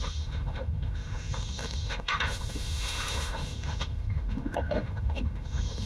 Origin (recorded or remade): remade